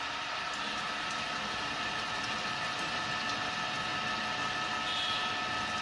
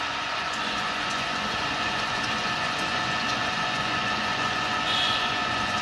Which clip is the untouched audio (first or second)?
first